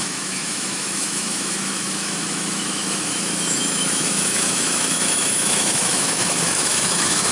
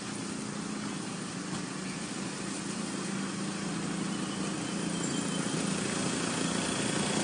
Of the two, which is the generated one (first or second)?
first